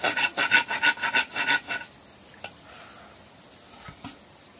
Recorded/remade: recorded